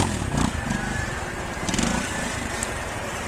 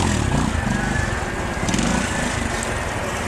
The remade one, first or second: first